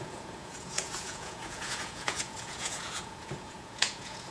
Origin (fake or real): fake